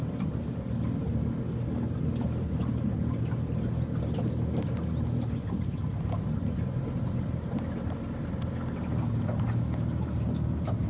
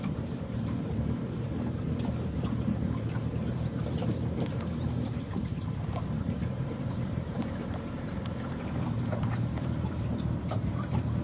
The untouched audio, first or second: first